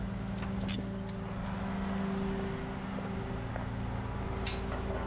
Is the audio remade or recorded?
recorded